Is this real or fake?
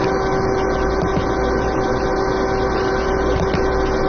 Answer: real